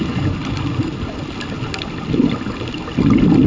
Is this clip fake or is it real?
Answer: real